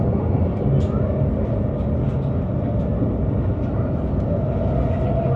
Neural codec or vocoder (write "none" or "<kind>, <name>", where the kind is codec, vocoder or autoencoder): none